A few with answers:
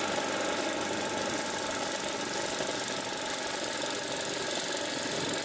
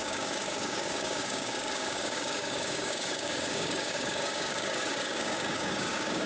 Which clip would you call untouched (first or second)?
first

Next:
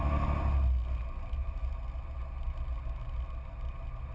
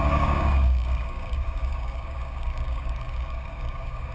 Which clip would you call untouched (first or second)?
first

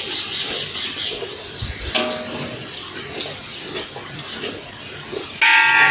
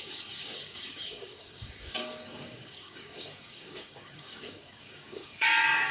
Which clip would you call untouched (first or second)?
first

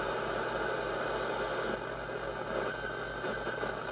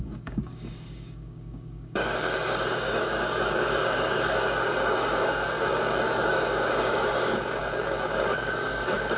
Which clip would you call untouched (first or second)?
first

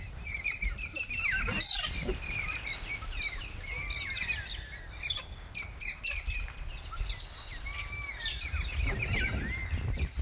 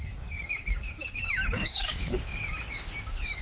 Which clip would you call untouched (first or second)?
first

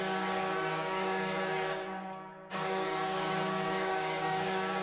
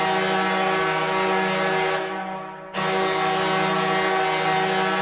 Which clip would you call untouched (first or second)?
second